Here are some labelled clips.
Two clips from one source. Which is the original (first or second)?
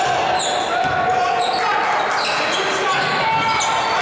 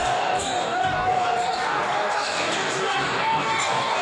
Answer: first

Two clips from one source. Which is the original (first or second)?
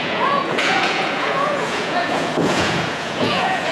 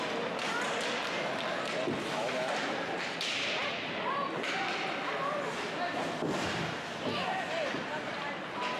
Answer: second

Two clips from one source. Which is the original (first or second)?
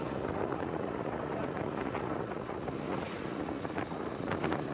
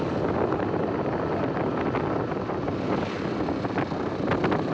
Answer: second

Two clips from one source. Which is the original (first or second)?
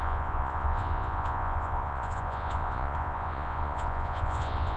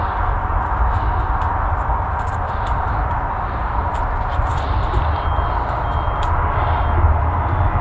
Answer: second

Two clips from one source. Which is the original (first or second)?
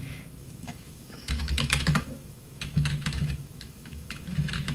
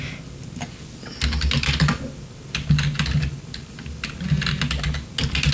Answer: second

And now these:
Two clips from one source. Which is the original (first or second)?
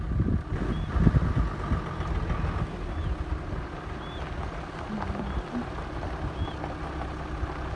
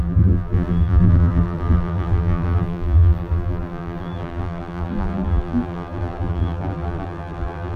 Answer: first